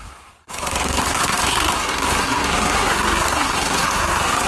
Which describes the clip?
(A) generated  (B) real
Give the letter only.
A